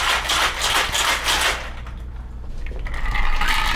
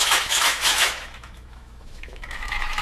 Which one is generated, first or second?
second